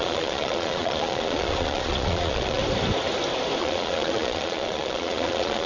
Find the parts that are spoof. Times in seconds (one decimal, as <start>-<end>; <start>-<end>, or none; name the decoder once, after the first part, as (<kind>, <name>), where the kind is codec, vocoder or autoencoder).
0.0-2.6 (vocoder, Vocos); 3.6-5.7